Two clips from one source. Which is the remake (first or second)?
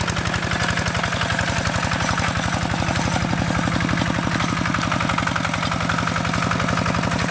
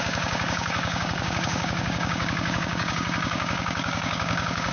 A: second